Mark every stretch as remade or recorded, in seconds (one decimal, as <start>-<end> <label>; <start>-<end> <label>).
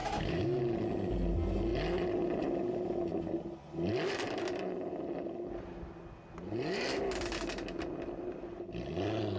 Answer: 0.0-0.6 remade; 0.6-9.4 recorded